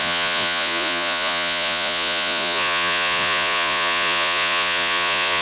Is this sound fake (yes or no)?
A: yes